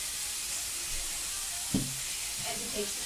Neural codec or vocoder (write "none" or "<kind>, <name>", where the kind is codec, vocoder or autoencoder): none